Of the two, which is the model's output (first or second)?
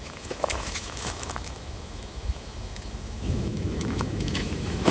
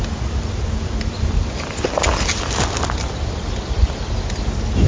first